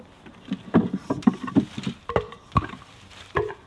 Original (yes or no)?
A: yes